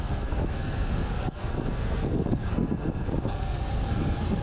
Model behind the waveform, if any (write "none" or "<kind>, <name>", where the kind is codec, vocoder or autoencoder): codec, SNAC